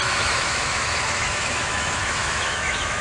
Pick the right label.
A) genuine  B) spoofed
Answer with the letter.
B